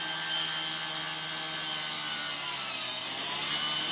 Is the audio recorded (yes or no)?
yes